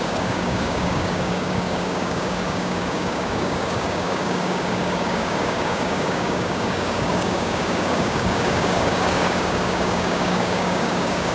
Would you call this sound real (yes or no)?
no